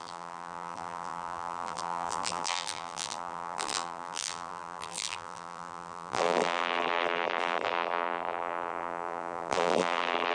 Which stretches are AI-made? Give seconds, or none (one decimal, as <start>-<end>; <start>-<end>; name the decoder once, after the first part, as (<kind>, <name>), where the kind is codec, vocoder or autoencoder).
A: 0.0-10.3 (vocoder, BigVGAN v2)